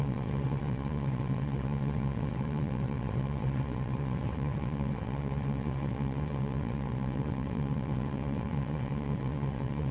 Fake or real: fake